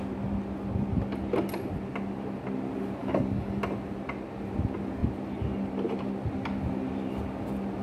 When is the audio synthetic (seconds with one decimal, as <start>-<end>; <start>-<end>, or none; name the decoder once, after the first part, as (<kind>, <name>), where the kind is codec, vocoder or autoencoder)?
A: 3.0-3.6 (codec, DAC)